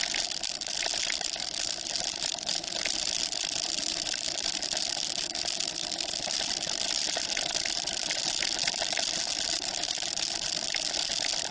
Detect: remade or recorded recorded